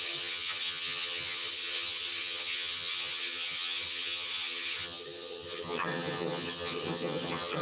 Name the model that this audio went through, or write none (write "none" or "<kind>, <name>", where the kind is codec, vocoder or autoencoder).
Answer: vocoder, HiFi-GAN